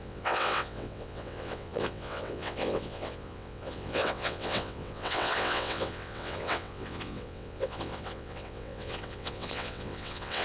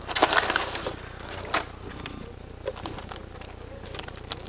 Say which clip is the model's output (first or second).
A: first